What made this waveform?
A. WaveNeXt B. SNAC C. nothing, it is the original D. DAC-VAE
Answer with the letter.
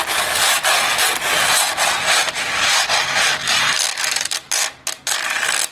C